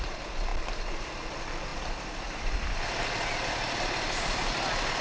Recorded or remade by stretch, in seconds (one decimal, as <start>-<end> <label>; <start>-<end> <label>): 0.0-5.0 remade